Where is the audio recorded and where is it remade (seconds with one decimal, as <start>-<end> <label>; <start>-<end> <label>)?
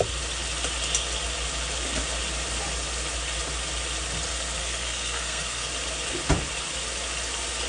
0.0-4.6 recorded; 4.6-5.7 remade; 5.7-7.7 recorded